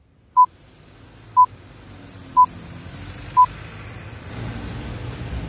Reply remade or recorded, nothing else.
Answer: recorded